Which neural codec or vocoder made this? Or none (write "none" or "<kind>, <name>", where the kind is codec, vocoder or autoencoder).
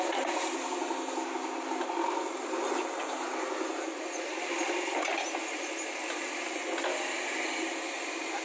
none